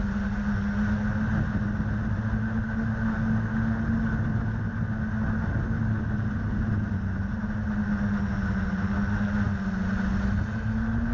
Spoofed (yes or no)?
no